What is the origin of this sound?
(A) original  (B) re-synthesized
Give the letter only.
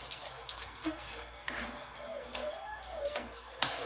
B